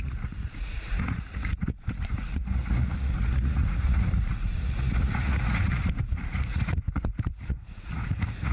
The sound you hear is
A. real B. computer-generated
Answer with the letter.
B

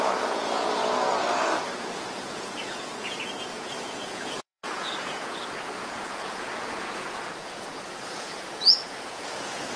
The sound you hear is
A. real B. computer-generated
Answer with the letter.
B